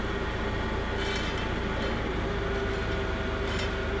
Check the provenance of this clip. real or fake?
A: real